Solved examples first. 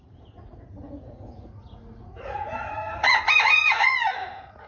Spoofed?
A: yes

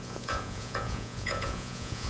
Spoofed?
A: yes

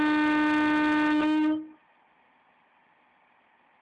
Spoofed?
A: no